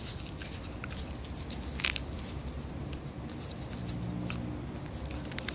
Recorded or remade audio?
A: recorded